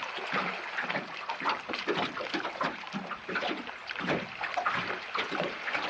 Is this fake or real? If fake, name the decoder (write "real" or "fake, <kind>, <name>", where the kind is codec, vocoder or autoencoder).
fake, vocoder, BigVGAN v2